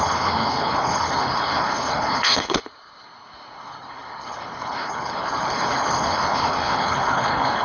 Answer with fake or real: fake